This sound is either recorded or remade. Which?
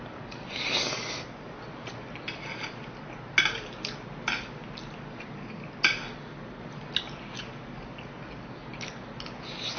recorded